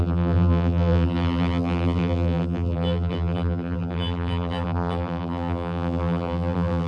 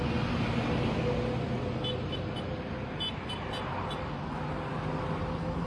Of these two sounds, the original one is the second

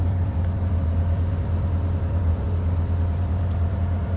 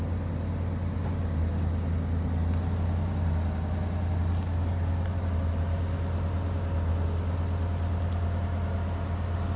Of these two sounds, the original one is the second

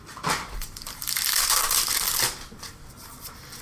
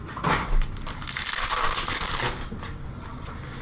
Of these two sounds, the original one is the second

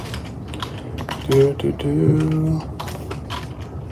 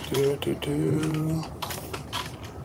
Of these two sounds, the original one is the first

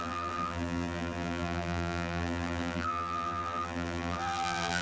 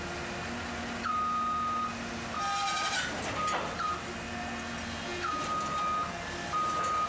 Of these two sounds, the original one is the second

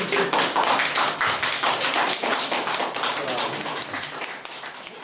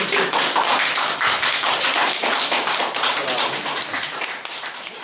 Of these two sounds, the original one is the first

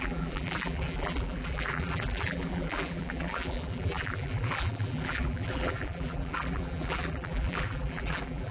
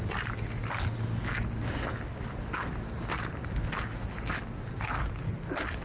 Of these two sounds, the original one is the second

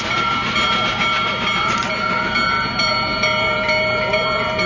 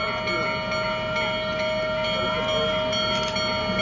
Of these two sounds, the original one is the second